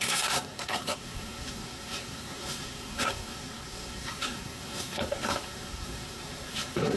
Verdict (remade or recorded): remade